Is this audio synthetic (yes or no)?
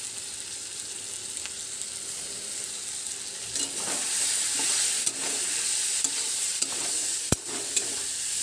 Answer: no